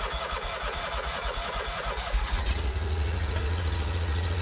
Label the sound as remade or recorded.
remade